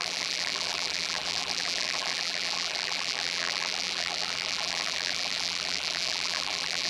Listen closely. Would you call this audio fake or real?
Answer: fake